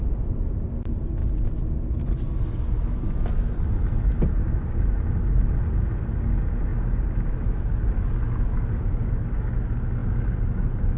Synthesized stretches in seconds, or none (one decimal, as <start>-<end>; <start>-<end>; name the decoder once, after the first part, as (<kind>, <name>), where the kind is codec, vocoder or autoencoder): none